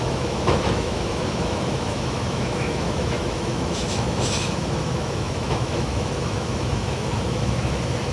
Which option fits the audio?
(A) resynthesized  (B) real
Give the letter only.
A